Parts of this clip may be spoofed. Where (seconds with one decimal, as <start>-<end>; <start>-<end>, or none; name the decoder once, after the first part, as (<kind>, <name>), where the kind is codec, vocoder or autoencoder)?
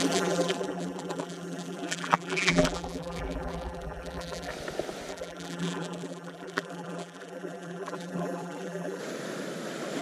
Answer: 0.0-4.5 (vocoder, BigVGAN v2); 5.1-9.0